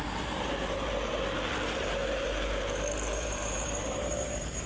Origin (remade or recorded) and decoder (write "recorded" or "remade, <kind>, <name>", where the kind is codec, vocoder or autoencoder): remade, vocoder, BigVGAN v2